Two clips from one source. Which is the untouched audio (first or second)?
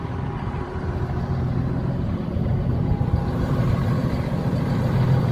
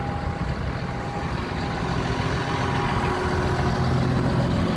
second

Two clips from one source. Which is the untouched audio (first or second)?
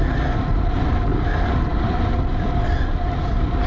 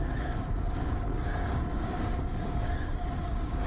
first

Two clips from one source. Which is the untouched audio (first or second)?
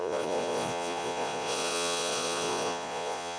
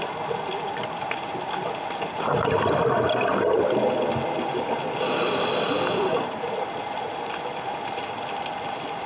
second